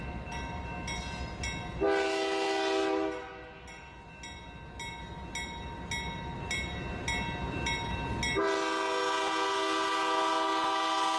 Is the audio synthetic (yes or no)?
no